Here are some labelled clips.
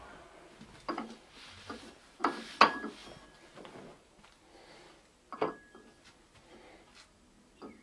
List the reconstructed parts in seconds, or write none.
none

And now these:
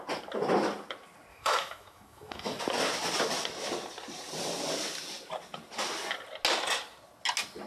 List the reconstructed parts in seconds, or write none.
1.3-2.6 (autoencoder, DAC-VAE)

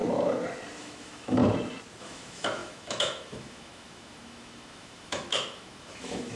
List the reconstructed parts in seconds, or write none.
0.8-1.4 (autoencoder, DAC-VAE); 2.0-6.4

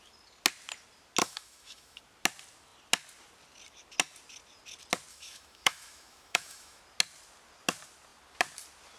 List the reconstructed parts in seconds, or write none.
1.2-2.0 (autoencoder, DAC-VAE); 5.1-6.8

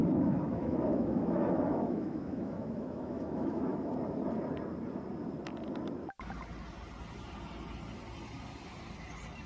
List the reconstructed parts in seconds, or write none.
0.0-3.9 (autoencoder, DAC-VAE)